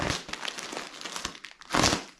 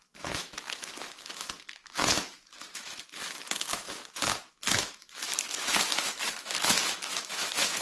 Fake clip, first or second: second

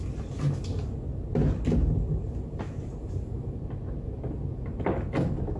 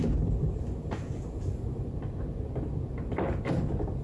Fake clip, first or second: second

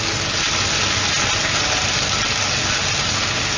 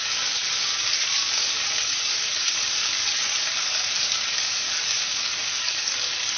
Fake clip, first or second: second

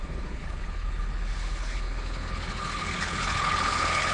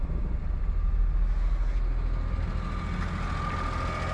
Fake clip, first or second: first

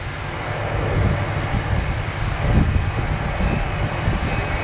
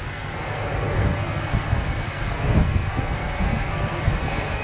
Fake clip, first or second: second